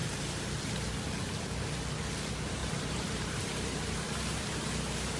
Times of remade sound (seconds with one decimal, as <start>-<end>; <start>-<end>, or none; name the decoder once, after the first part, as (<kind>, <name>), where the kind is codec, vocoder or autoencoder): 2.6-4.7 (vocoder, BigVGAN v2)